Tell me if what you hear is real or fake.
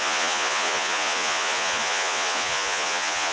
fake